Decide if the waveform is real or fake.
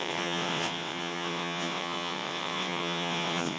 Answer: fake